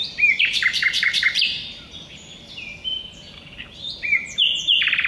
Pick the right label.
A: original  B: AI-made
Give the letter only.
B